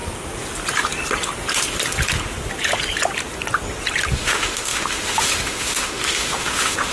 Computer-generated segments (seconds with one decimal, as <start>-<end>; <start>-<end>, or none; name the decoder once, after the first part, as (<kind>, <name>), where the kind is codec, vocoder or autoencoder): 4.1-6.9 (autoencoder, DAC-VAE)